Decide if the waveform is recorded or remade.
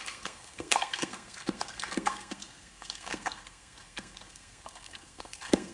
remade